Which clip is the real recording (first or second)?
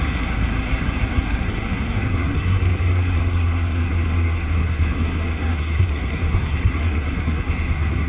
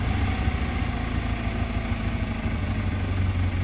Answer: second